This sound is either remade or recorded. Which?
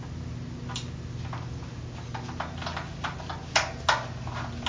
recorded